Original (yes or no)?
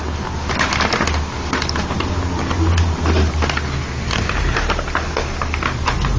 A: yes